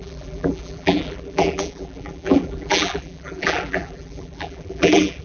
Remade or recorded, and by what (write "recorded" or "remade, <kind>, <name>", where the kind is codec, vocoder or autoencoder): remade, vocoder, BigVGAN v2